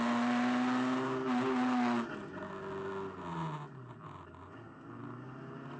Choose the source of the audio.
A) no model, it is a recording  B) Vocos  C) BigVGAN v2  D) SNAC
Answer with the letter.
A